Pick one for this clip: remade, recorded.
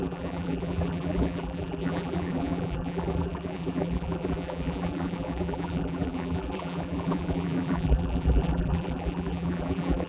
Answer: remade